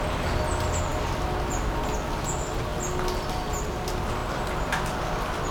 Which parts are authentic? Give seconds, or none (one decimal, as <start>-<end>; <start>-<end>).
0.0-5.5